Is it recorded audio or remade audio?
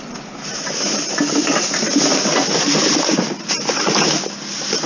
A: recorded